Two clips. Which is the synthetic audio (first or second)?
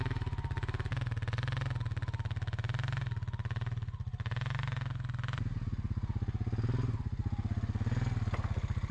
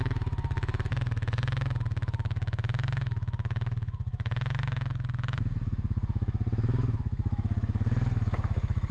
second